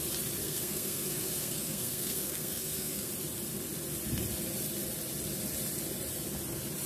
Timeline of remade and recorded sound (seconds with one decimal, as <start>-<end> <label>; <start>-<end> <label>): 0.0-0.4 recorded; 0.4-3.1 remade; 3.1-6.9 recorded

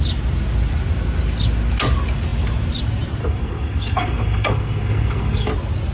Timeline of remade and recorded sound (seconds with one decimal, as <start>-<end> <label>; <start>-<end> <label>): 0.0-3.2 recorded; 3.2-5.5 remade; 5.5-5.9 recorded